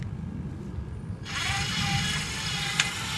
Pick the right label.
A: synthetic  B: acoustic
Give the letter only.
B